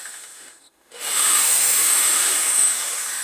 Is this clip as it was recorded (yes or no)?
no